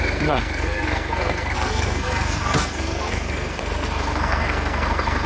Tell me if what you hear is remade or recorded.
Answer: remade